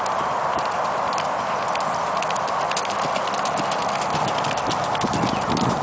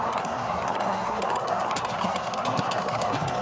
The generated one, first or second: second